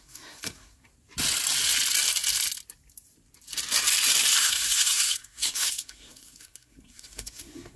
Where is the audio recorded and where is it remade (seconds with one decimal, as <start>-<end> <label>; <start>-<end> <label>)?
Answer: 0.0-0.9 remade; 0.9-4.4 recorded; 4.4-7.8 remade